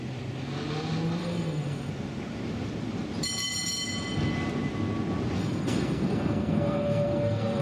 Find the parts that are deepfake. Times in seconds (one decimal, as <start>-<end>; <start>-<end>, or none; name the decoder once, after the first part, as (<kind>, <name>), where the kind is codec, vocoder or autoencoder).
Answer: 1.2-1.9 (codec, SNAC); 5.4-7.6